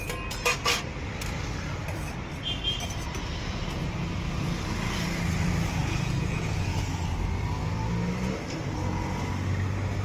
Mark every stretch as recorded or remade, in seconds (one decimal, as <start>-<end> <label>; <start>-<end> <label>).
0.0-5.8 recorded; 5.8-6.8 remade; 6.8-10.0 recorded